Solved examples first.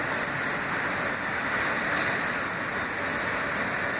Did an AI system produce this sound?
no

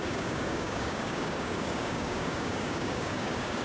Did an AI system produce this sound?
yes